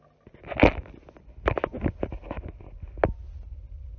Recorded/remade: recorded